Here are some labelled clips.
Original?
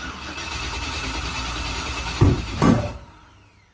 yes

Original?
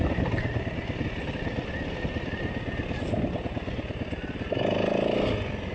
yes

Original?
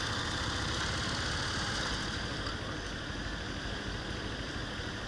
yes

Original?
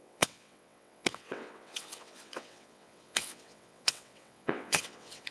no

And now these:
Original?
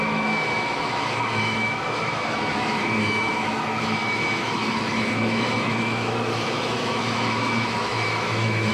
no